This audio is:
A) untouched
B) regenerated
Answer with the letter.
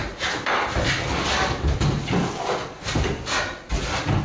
A